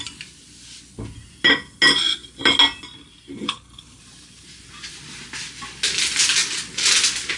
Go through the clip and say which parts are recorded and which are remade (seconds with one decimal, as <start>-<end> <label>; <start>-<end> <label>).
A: 0.0-3.3 recorded; 3.3-4.0 remade; 4.0-7.4 recorded